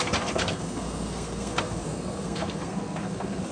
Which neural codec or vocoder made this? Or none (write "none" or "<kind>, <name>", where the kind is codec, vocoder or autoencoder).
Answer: codec, SNAC